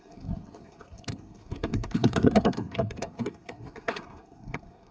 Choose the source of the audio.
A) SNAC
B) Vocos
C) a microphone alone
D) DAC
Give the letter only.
A